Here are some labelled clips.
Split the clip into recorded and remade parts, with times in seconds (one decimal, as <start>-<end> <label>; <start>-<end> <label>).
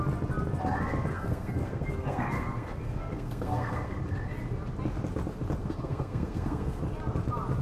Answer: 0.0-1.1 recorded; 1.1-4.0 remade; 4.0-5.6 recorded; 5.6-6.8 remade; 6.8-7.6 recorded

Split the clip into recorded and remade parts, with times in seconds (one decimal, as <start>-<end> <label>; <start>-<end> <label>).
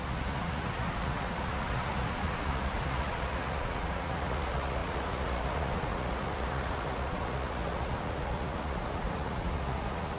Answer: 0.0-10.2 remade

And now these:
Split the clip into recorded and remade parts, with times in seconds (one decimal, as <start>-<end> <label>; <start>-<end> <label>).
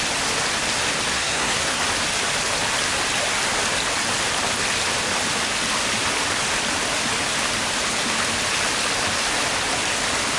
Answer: 0.0-1.1 recorded; 1.1-1.8 remade; 1.8-10.4 recorded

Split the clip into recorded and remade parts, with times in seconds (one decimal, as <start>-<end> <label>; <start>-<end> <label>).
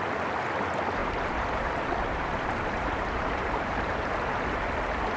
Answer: 0.0-1.0 recorded; 1.0-4.1 remade; 4.1-5.2 recorded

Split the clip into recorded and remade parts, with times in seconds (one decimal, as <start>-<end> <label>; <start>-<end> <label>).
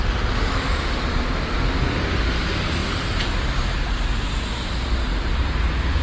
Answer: 0.0-6.0 recorded